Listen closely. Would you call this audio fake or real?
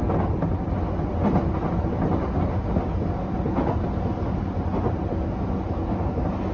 real